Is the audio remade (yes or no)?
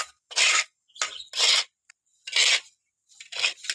no